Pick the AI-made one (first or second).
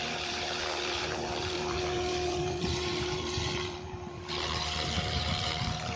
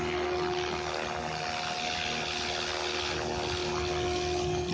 first